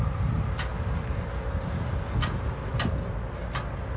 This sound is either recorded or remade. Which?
recorded